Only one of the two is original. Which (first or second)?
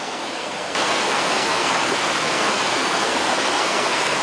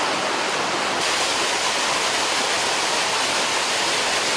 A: second